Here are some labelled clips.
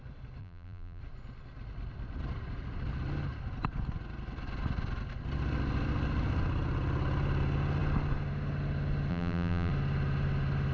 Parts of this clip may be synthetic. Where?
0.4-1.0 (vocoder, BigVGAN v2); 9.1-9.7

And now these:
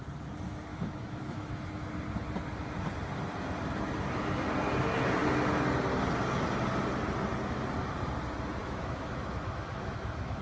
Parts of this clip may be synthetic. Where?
0.7-1.9 (autoencoder, DAC-VAE); 8.6-10.4

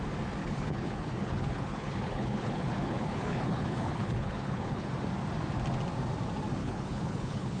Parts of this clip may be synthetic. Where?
0.4-4.9 (codec, HILCodec); 6.6-7.6

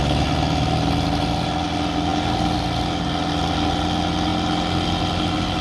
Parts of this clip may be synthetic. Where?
none